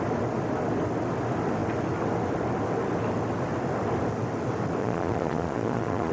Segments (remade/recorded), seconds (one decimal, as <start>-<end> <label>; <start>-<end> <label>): 0.0-4.8 recorded; 4.8-6.1 remade